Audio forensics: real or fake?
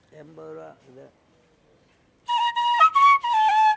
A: real